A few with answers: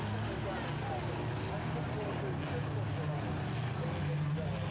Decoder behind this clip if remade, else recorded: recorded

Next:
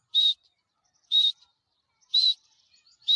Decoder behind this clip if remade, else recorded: recorded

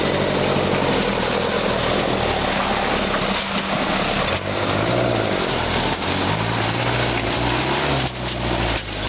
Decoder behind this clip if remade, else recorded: recorded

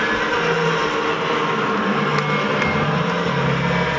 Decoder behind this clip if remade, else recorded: recorded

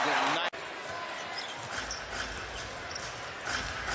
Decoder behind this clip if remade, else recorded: recorded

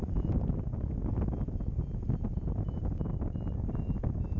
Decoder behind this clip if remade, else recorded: recorded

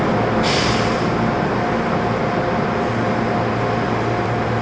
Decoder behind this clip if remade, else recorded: recorded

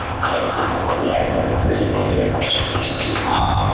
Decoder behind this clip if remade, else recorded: remade, codec, ZipCodec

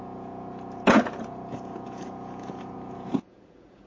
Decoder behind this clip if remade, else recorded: remade, vocoder, Vocos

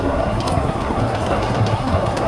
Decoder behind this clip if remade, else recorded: remade, codec, SNAC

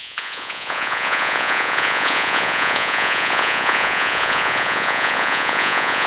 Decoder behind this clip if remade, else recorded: remade, vocoder, Vocos